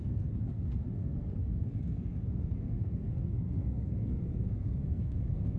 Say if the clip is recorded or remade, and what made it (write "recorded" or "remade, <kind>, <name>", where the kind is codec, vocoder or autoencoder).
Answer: remade, codec, SNAC